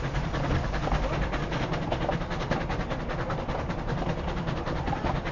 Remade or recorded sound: recorded